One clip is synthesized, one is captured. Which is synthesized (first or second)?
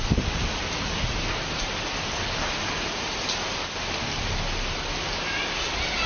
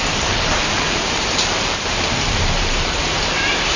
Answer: second